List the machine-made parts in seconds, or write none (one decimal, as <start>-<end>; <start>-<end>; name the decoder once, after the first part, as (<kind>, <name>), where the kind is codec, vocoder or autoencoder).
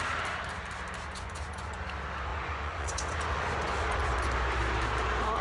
1.1-1.8 (vocoder, Vocos); 2.3-4.3